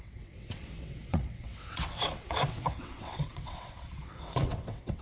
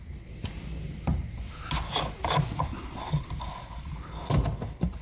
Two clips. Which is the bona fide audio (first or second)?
second